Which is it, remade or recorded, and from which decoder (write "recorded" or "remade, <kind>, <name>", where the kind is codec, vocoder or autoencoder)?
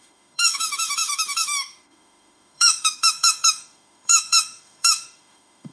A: remade, autoencoder, DAC-VAE